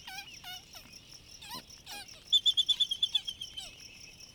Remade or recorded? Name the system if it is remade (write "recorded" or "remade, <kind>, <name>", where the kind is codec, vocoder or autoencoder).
recorded